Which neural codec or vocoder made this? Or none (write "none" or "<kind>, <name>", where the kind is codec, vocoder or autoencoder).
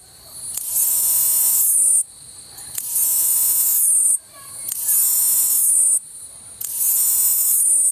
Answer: vocoder, BigVGAN v2